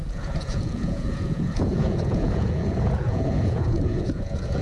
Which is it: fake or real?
fake